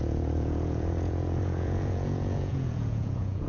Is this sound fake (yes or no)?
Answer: yes